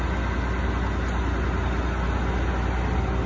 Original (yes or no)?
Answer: yes